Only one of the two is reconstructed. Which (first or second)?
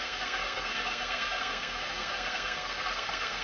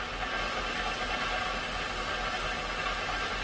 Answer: first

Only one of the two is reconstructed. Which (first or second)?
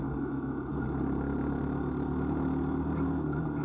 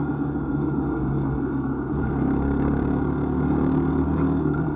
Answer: second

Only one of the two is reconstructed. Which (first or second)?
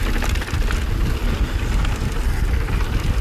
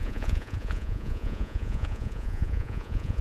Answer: second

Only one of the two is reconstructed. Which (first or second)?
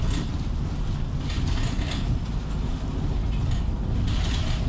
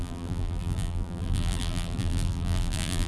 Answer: second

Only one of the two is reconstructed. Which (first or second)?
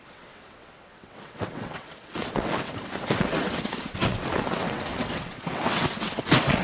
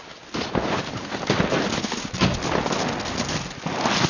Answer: first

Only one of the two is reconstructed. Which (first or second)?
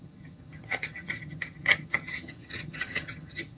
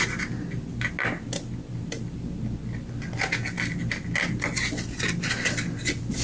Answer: first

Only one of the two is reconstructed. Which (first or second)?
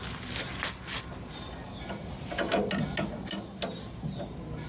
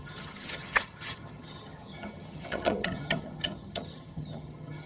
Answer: second